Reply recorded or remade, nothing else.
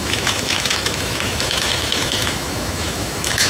remade